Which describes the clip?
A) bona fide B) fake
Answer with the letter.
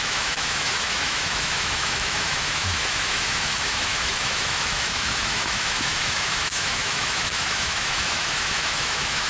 B